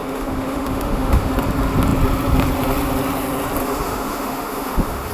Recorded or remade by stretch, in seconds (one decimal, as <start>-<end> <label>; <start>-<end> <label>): 0.0-1.3 remade; 1.3-3.6 recorded; 3.6-5.1 remade